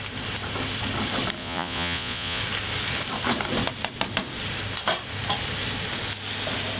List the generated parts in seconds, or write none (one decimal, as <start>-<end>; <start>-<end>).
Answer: 1.4-2.4